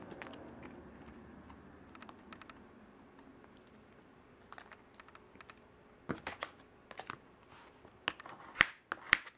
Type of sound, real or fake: real